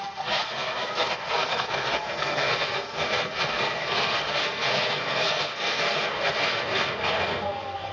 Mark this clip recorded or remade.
remade